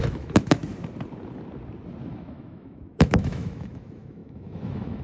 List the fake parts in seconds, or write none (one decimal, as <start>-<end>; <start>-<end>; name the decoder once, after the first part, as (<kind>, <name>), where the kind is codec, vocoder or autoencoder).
0.0-0.6 (autoencoder, DAC-VAE); 2.1-5.0